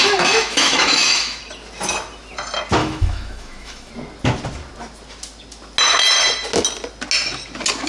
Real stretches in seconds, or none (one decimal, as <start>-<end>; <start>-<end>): 1.4-2.8; 3.9-7.9